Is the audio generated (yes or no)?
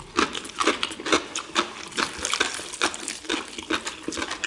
no